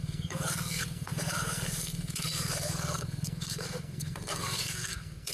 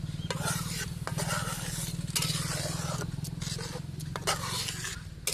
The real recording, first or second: second